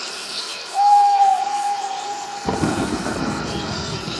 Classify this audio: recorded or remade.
remade